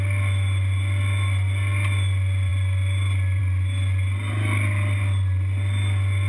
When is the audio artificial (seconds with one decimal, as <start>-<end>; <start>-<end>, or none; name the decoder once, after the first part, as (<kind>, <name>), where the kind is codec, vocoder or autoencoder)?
none